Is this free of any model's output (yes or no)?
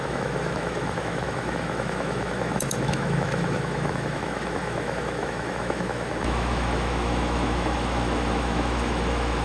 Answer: no